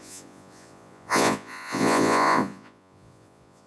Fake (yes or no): yes